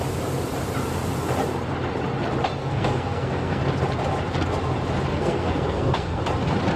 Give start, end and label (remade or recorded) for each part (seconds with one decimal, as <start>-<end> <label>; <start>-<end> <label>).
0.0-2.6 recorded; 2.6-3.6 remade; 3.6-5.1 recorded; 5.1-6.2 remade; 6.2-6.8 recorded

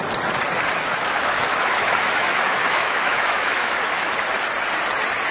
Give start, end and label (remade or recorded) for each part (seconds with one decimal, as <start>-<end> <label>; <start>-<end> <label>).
0.0-0.9 recorded; 0.9-4.1 remade; 4.1-5.3 recorded

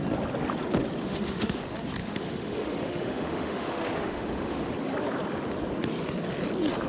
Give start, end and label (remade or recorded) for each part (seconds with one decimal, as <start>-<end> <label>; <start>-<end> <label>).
0.0-1.0 recorded; 1.0-1.6 remade; 1.6-2.0 recorded; 2.0-4.7 remade; 4.7-6.9 recorded